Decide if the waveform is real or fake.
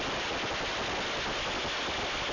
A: real